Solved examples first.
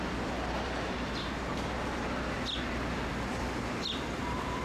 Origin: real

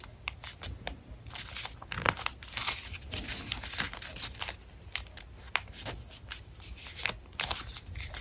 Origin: real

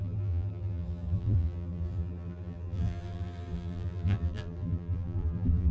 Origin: fake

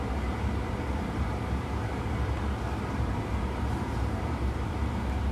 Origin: fake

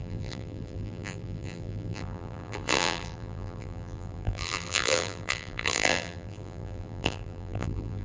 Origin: fake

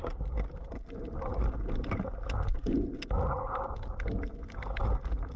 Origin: real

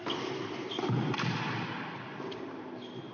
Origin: real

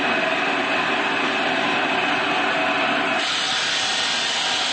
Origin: real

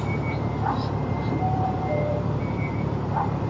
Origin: fake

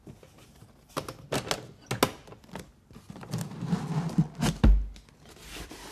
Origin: real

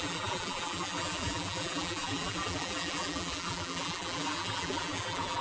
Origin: fake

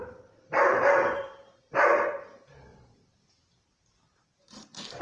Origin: fake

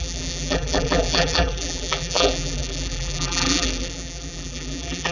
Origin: fake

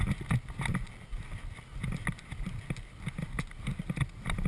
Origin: real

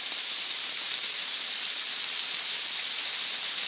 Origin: fake